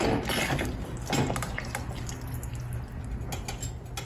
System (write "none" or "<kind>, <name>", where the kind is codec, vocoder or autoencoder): none